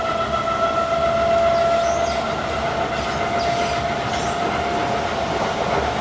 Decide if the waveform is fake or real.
real